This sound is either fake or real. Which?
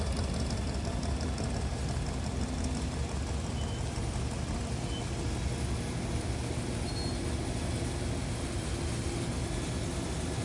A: real